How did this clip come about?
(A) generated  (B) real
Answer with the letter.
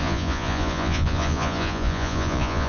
A